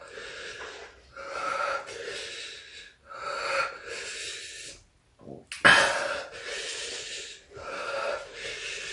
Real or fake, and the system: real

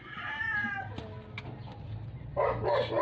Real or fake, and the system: fake, vocoder, BigVGAN v2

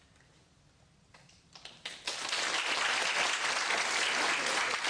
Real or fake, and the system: real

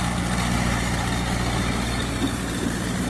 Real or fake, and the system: real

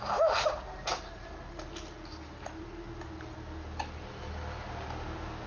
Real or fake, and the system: real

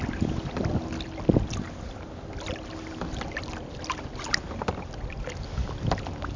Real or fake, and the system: real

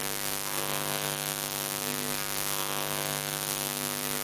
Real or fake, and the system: real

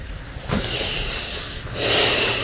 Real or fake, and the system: real